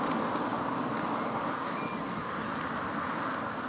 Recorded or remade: recorded